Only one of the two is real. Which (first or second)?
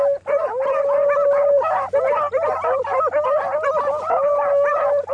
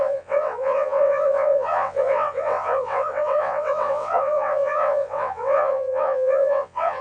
first